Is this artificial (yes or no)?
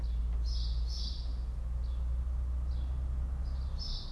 no